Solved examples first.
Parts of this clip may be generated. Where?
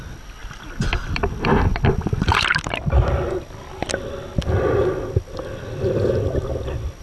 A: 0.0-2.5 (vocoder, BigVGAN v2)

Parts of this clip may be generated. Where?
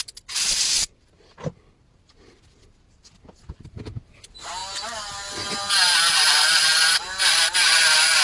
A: none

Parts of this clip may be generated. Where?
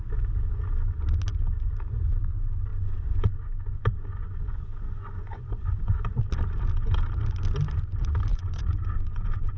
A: 2.7-6.2 (vocoder, Vocos); 8.3-9.6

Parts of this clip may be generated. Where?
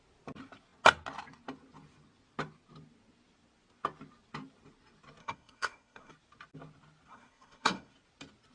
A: 5.2-6.1 (codec, SNAC); 7.1-7.9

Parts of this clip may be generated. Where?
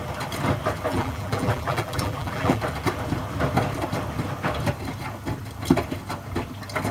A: 0.9-2.6 (vocoder, BigVGAN v2)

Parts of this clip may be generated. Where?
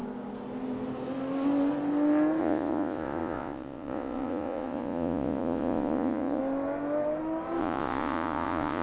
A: 2.4-6.4 (vocoder, Vocos); 7.6-8.8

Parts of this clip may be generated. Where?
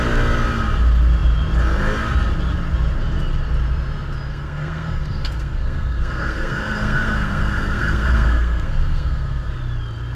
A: 4.3-9.5 (codec, SNAC)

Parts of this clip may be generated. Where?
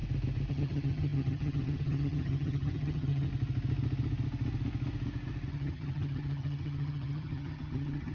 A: 0.5-3.3 (vocoder, HiFi-GAN); 5.5-8.1